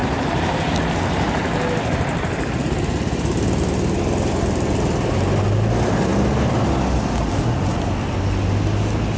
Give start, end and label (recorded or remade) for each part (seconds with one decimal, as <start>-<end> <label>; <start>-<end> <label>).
0.0-9.2 recorded